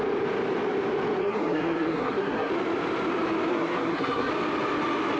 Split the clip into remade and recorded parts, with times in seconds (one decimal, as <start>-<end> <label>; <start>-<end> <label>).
0.0-1.2 recorded; 1.2-2.5 remade; 2.5-3.5 recorded; 3.5-4.3 remade; 4.3-5.2 recorded